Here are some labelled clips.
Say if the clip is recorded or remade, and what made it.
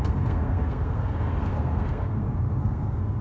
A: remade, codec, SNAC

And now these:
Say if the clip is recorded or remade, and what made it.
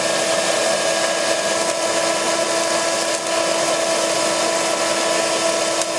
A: recorded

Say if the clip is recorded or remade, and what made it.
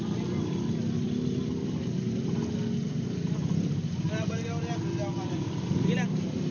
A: recorded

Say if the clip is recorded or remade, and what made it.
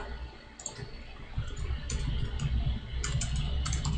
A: recorded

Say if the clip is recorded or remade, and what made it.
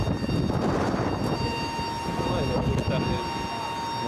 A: recorded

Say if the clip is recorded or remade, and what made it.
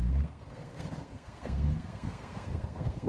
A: remade, codec, SNAC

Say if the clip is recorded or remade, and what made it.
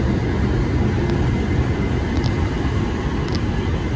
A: recorded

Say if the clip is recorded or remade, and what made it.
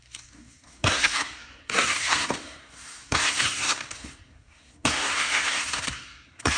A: remade, codec, SNAC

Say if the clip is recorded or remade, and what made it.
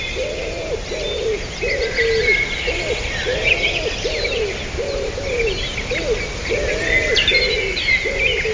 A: recorded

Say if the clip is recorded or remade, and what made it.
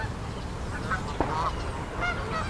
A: recorded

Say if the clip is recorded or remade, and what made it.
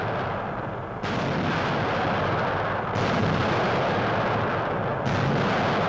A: recorded